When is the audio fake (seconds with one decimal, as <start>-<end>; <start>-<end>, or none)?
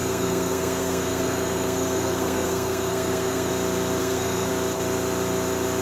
0.0-3.5; 4.0-4.5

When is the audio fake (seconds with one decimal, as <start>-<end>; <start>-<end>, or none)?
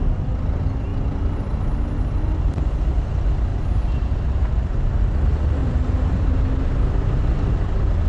3.5-4.9; 5.6-6.6